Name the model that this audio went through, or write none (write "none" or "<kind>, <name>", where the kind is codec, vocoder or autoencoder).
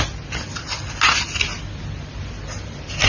none